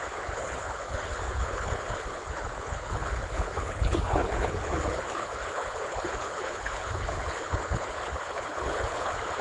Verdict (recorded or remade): remade